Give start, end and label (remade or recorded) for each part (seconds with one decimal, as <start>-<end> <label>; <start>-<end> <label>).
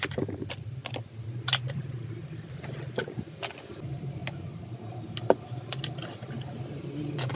0.0-0.8 remade; 0.8-1.7 recorded; 1.7-2.2 remade; 2.2-3.7 recorded; 3.7-4.2 remade; 4.2-7.0 recorded; 7.0-7.4 remade